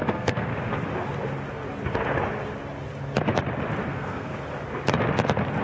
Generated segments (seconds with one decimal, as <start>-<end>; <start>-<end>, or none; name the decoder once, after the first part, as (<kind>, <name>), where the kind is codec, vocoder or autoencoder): 0.0-0.5 (codec, SNAC); 3.9-4.3